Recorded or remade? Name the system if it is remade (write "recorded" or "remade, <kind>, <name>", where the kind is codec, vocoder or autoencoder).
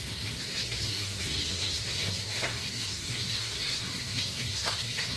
remade, codec, SNAC